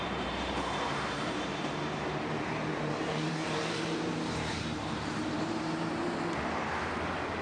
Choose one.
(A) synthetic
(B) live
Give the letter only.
A